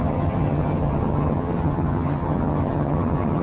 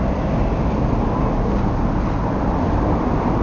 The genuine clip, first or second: second